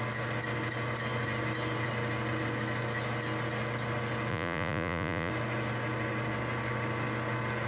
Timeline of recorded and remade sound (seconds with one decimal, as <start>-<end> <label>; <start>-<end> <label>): 0.0-4.3 recorded; 4.3-5.3 remade; 5.3-7.7 recorded